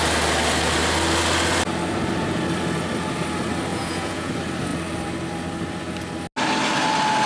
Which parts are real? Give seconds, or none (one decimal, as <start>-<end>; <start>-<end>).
0.0-3.7; 4.3-7.3